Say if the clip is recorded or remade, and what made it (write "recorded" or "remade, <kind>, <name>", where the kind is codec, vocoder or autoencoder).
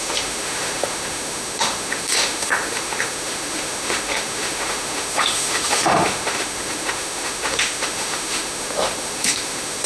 remade, autoencoder, DAC-VAE